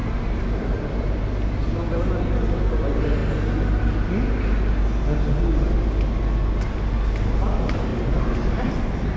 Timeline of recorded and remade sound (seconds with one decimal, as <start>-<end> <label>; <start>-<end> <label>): 0.0-9.2 recorded

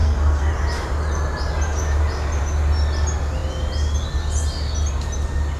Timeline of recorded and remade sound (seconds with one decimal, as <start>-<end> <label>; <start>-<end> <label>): 0.0-0.5 remade; 0.5-5.6 recorded

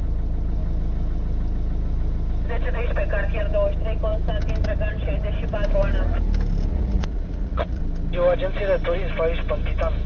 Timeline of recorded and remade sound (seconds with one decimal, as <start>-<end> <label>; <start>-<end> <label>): 0.0-6.7 recorded; 6.7-7.8 remade; 7.8-10.1 recorded

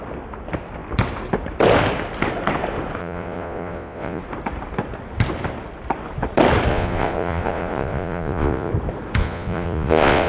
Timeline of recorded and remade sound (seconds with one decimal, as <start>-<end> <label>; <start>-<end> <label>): 0.0-3.0 recorded; 3.0-4.2 remade; 4.2-6.7 recorded; 6.7-8.7 remade; 8.7-9.2 recorded; 9.2-10.3 remade

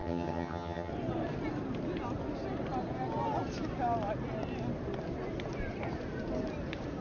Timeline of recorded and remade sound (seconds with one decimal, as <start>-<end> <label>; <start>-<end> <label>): 0.0-0.9 remade; 0.9-7.0 recorded

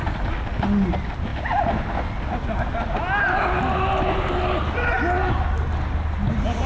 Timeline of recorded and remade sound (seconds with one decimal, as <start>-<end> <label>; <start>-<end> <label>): 0.0-6.7 recorded

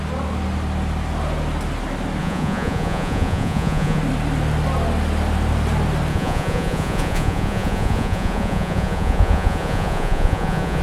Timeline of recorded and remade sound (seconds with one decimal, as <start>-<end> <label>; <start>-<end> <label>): 0.0-2.2 recorded; 2.2-4.0 remade; 4.0-6.1 recorded; 6.1-10.8 remade

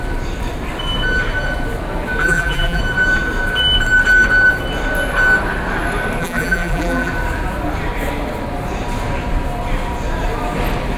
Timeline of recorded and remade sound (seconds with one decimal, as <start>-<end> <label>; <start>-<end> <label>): 0.0-2.2 recorded; 2.2-2.8 remade; 2.8-6.2 recorded; 6.2-7.1 remade; 7.1-11.0 recorded